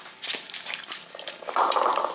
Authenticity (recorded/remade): recorded